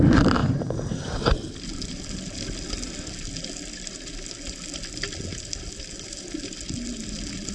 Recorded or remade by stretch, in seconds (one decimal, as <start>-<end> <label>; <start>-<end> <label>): 0.0-0.4 recorded; 0.4-1.5 remade; 1.5-7.5 recorded